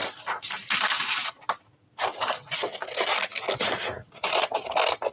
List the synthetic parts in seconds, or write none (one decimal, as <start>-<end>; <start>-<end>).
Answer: none